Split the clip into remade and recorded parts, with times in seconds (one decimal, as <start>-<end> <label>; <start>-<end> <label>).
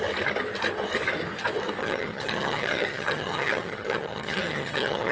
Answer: 0.0-1.8 recorded; 1.8-5.1 remade